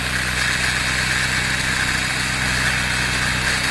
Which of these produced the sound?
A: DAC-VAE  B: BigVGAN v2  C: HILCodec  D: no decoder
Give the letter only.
D